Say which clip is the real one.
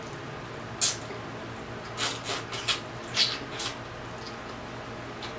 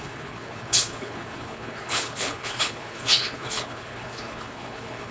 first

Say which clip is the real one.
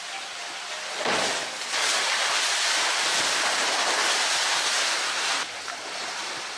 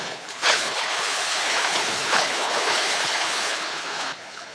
first